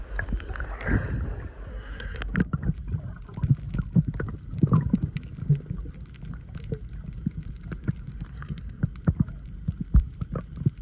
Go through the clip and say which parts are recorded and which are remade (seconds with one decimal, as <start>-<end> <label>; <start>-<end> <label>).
0.0-1.7 recorded; 1.7-2.2 remade; 2.2-8.3 recorded; 8.3-8.8 remade; 8.8-10.8 recorded